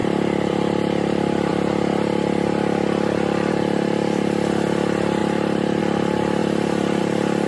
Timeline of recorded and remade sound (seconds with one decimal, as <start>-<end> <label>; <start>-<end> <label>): 0.0-5.2 recorded; 5.2-5.8 remade; 5.8-6.4 recorded; 6.4-7.0 remade; 7.0-7.5 recorded